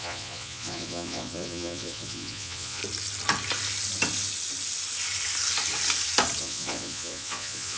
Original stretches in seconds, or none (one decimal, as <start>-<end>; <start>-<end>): 2.8-6.4